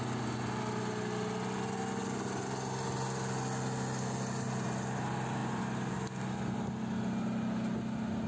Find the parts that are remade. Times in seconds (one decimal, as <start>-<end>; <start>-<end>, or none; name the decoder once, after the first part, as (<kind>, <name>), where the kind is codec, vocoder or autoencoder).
none